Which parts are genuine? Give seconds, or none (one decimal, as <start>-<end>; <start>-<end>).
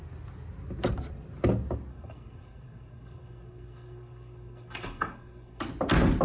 0.0-1.9; 5.6-6.2